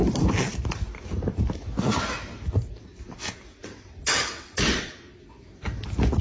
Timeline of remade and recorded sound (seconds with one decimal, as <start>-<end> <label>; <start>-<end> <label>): 0.0-3.6 recorded; 3.6-4.9 remade; 4.9-6.2 recorded